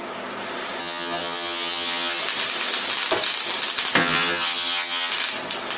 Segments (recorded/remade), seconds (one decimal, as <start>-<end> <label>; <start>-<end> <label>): 0.0-0.8 recorded; 0.8-2.2 remade; 2.2-4.0 recorded; 4.0-5.1 remade; 5.1-5.8 recorded